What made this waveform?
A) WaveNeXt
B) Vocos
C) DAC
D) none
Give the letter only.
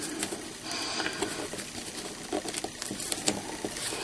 D